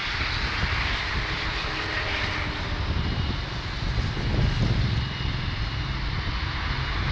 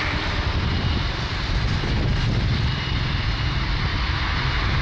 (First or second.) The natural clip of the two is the first